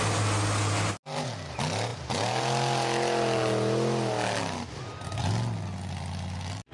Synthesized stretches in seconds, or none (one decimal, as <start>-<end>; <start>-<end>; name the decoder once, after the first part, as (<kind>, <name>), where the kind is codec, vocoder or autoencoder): none